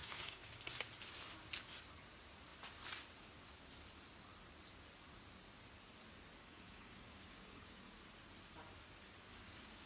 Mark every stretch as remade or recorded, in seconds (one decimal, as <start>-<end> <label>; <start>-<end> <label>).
0.0-0.5 remade; 0.5-6.4 recorded; 6.4-7.8 remade; 7.8-9.3 recorded; 9.3-9.9 remade